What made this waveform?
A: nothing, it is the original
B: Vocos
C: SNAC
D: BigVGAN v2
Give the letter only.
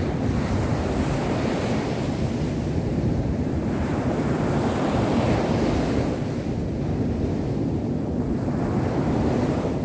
D